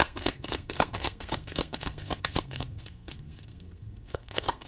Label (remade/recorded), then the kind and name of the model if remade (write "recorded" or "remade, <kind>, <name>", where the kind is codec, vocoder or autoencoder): remade, codec, SNAC